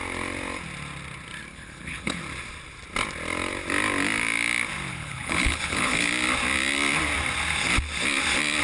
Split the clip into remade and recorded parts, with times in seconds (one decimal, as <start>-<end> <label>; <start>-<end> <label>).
0.0-1.5 recorded; 1.5-2.2 remade; 2.2-4.9 recorded; 4.9-6.1 remade; 6.1-8.6 recorded

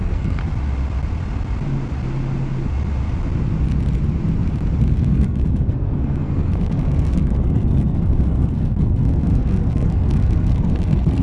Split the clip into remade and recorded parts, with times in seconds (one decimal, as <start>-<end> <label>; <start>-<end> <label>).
0.0-0.4 remade; 0.4-4.9 recorded; 4.9-11.2 remade

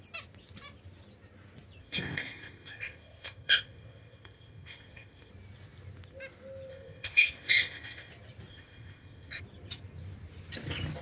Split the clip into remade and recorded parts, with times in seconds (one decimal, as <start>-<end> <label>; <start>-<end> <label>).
0.0-1.8 recorded; 1.8-5.3 remade; 5.3-6.7 recorded; 6.7-8.1 remade; 8.1-8.5 recorded; 8.5-9.4 remade; 9.4-11.0 recorded

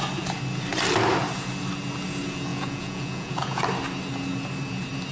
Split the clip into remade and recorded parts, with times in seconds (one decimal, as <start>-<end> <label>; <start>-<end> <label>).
0.0-2.5 recorded; 2.5-3.6 remade; 3.6-5.1 recorded

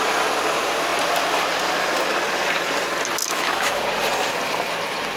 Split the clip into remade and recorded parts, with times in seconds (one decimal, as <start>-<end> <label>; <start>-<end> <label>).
0.0-3.2 recorded; 3.2-3.8 remade; 3.8-5.2 recorded

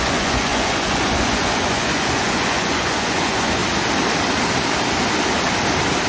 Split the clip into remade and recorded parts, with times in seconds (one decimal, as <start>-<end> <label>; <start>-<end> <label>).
0.0-3.6 remade; 3.6-6.1 recorded

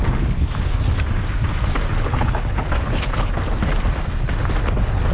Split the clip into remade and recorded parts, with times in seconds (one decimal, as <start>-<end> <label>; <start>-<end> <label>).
0.0-1.9 recorded; 1.9-3.3 remade; 3.3-5.1 recorded